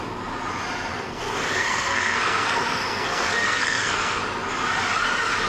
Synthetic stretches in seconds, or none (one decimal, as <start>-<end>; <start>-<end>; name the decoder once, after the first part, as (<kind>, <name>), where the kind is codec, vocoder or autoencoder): 0.9-4.2 (codec, SNAC)